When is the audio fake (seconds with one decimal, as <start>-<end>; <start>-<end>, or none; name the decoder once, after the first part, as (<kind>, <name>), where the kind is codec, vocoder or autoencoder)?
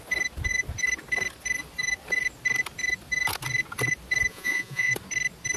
4.3-4.9 (vocoder, Vocos)